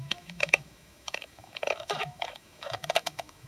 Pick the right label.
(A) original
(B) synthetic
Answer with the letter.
B